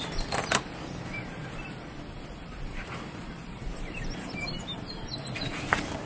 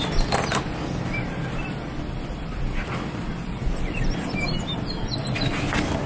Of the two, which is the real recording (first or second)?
second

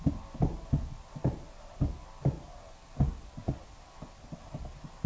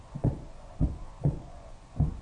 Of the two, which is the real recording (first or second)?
first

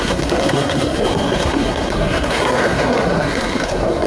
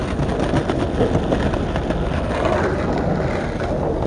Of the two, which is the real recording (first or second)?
second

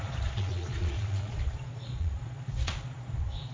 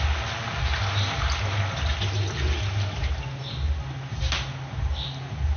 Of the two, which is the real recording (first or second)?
second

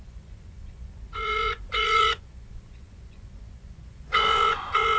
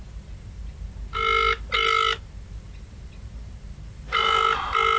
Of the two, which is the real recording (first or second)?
second